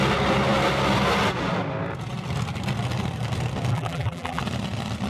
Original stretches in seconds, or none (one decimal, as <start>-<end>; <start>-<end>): 0.0-3.7; 4.4-5.1

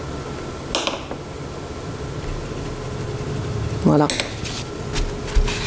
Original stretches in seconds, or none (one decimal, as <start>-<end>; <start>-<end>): 0.0-5.7

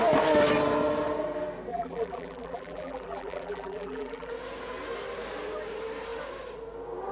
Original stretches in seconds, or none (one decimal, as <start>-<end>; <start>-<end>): 0.0-1.7; 4.3-7.1

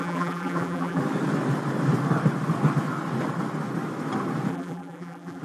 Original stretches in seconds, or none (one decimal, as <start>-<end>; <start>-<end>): 1.0-4.5

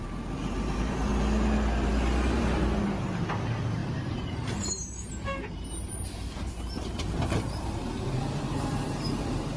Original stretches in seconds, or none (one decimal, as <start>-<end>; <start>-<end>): 1.1-2.4

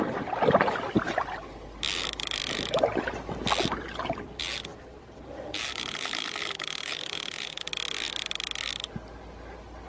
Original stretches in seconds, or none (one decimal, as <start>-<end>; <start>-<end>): 0.0-9.9

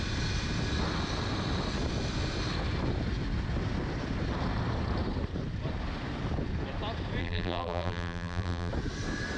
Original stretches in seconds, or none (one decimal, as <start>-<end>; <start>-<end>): 0.0-7.2; 8.7-9.4

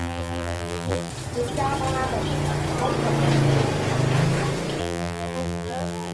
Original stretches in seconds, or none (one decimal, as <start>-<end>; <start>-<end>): 1.1-4.8